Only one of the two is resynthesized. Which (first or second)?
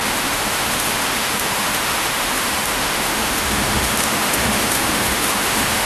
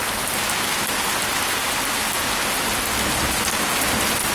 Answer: first